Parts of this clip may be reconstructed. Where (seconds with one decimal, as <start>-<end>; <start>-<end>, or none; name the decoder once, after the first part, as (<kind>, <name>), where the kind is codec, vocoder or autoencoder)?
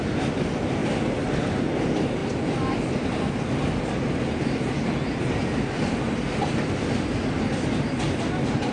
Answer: none